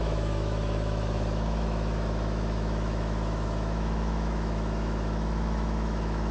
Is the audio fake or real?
fake